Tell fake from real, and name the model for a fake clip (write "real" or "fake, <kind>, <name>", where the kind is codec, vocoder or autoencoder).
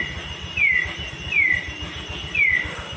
real